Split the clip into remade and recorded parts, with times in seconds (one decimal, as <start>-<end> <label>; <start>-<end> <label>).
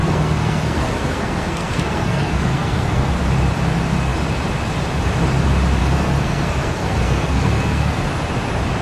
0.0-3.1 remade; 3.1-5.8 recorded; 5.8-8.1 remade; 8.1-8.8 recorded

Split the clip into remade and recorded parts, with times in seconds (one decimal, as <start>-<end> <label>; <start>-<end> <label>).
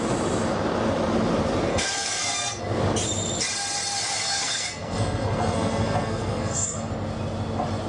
0.0-1.7 recorded; 1.7-2.6 remade; 2.6-4.2 recorded; 4.2-6.9 remade; 6.9-7.9 recorded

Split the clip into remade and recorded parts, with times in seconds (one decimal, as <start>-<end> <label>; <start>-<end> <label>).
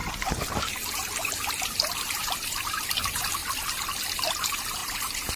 0.0-0.6 recorded; 0.6-3.4 remade; 3.4-4.1 recorded; 4.1-5.4 remade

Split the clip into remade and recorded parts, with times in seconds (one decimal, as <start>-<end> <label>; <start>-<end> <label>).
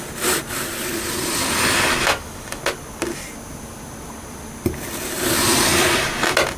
0.0-2.0 recorded; 2.0-2.6 remade; 2.6-6.6 recorded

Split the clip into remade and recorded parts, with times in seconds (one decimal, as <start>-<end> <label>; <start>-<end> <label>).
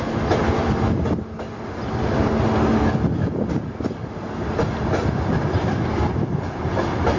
0.0-7.2 recorded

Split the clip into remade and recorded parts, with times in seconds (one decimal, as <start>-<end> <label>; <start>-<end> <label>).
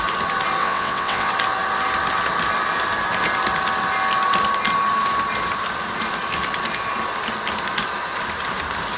0.0-0.6 recorded; 0.6-1.3 remade; 1.3-9.0 recorded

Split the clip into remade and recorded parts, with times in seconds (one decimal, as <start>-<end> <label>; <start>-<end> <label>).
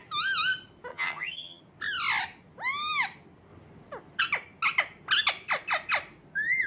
0.0-0.9 recorded; 0.9-1.6 remade; 1.6-6.7 recorded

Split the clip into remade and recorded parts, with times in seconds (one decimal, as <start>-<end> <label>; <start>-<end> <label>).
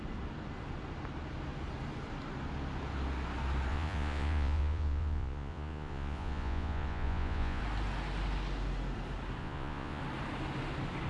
0.0-3.7 recorded; 3.7-7.6 remade; 7.6-9.4 recorded; 9.4-10.0 remade; 10.0-11.1 recorded